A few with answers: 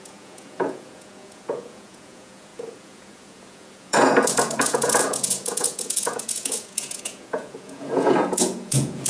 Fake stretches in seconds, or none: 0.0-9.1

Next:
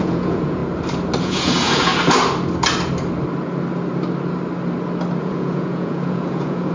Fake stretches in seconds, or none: 0.0-0.6; 1.2-1.9; 5.2-6.7

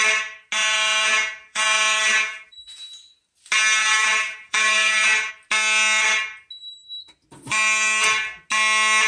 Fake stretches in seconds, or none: 0.6-2.5; 3.8-5.3

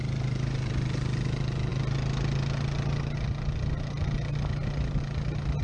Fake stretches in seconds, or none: none

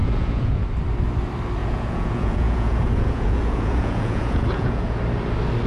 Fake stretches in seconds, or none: 0.0-0.6; 1.6-5.0